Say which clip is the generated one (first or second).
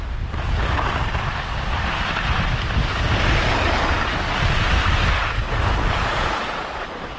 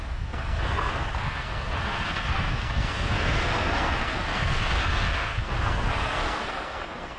second